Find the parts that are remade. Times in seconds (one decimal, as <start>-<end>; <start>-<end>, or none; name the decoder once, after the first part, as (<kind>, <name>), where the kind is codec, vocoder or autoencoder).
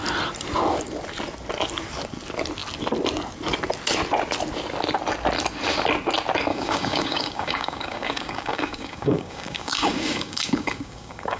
6.5-11.4 (codec, DAC)